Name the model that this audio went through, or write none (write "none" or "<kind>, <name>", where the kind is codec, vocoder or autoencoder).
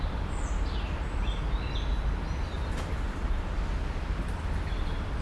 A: none